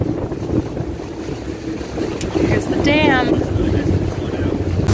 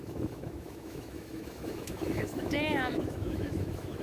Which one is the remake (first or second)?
second